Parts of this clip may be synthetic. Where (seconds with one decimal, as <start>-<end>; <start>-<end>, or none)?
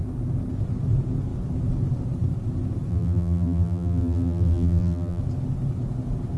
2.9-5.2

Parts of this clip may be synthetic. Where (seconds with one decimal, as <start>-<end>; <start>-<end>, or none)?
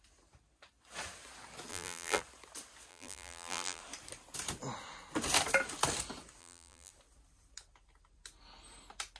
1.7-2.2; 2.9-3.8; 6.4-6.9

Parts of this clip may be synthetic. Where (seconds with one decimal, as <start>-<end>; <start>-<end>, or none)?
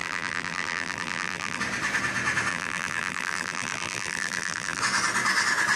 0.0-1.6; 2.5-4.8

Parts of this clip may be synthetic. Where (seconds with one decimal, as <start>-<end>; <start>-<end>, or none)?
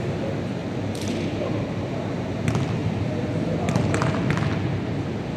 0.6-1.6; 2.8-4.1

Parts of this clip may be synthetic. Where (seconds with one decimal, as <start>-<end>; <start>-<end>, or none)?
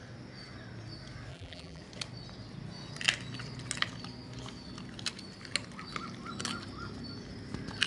1.3-1.8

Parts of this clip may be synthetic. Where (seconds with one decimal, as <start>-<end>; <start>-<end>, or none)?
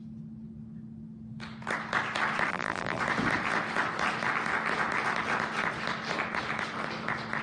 2.5-3.0